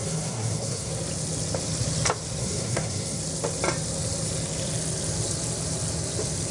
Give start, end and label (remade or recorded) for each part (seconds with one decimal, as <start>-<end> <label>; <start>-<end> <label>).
0.0-0.9 remade; 0.9-2.4 recorded; 2.4-3.2 remade; 3.2-6.5 recorded